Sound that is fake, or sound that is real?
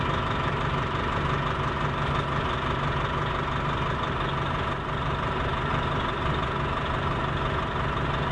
real